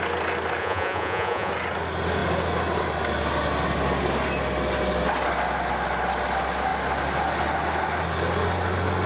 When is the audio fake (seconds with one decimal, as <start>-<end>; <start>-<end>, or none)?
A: 0.6-1.5